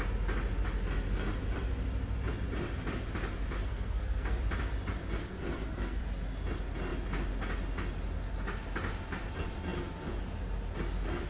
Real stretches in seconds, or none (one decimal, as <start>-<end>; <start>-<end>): 0.0-3.6; 4.4-5.2; 6.0-11.3